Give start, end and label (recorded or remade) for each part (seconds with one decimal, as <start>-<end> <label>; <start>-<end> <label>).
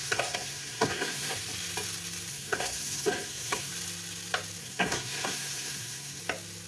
0.0-1.4 remade; 1.4-2.3 recorded; 2.3-3.7 remade; 3.7-4.6 recorded; 4.6-6.2 remade; 6.2-6.7 recorded